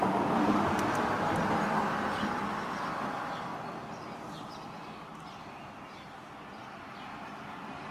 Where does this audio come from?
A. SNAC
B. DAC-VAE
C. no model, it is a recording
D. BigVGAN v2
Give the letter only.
C